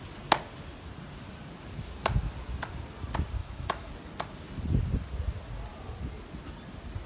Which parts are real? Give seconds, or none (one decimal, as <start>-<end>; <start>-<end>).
0.0-3.4; 3.9-7.1